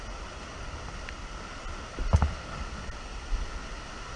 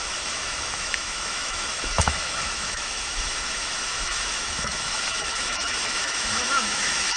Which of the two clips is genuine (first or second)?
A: first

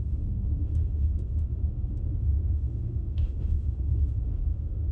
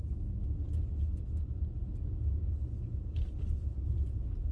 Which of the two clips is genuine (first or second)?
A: second